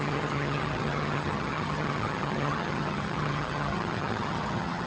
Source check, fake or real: fake